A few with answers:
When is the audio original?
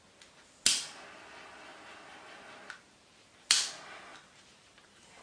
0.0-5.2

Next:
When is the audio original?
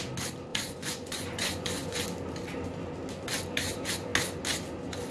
0.0-0.5; 2.0-5.1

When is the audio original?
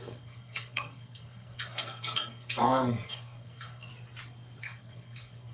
3.9-4.6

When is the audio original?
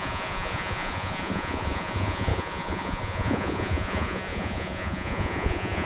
none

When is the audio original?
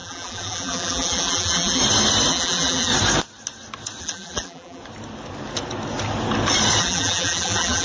1.8-2.3; 2.9-4.0; 4.8-6.8